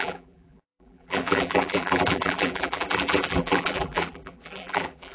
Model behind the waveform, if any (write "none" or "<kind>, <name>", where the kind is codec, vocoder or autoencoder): vocoder, BigVGAN v2